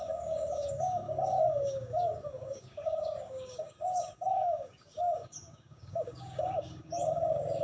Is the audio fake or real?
fake